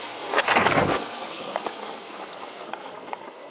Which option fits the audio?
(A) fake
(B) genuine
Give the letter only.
A